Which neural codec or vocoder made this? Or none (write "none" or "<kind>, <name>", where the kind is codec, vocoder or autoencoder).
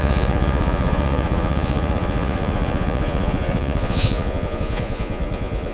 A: vocoder, Vocos